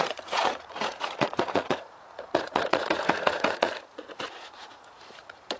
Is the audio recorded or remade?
remade